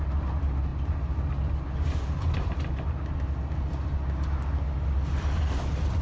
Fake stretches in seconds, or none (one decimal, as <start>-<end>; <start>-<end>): none